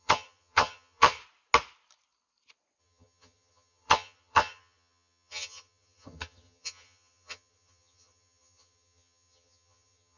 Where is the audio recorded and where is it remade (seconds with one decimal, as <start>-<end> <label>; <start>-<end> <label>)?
0.0-1.2 remade; 1.2-2.8 recorded; 2.8-10.2 remade